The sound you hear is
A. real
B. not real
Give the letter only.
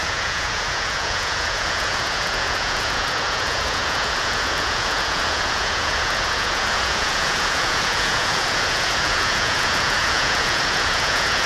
B